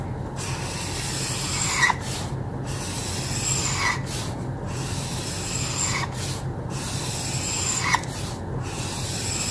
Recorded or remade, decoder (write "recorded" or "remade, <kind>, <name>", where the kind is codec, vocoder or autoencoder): recorded